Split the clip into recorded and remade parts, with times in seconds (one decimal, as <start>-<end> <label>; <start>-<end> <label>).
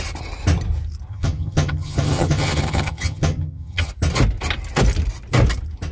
0.0-1.1 recorded; 1.1-3.9 remade; 3.9-5.9 recorded